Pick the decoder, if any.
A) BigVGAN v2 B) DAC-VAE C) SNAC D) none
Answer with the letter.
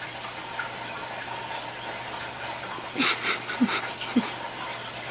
D